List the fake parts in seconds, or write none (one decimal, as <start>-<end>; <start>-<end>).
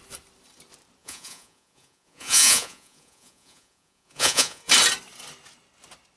1.0-4.7